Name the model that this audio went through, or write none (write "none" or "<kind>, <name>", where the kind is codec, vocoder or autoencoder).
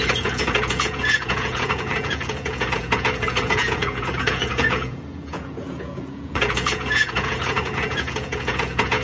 vocoder, Vocos